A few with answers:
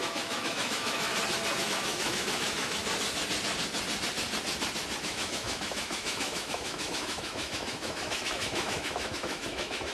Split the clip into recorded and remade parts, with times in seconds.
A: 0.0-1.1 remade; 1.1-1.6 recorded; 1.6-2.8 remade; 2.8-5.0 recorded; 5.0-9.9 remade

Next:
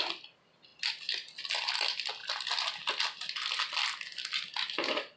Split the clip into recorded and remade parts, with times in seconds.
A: 0.0-5.2 recorded

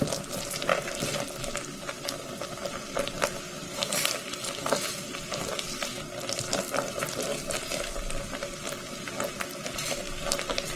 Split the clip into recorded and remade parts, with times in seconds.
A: 0.0-10.8 recorded

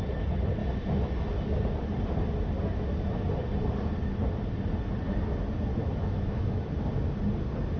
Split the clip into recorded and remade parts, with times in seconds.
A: 0.0-5.7 recorded; 5.7-6.7 remade; 6.7-7.8 recorded

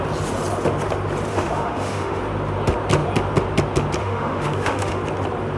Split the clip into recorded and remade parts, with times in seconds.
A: 0.0-1.3 recorded; 1.3-2.2 remade; 2.2-4.0 recorded; 4.0-5.0 remade; 5.0-5.6 recorded

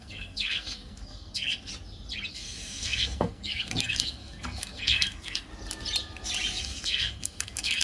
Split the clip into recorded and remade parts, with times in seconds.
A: 0.0-1.7 remade; 1.7-2.3 recorded; 2.3-5.5 remade; 5.5-6.6 recorded; 6.6-7.8 remade